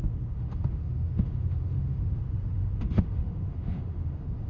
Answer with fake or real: fake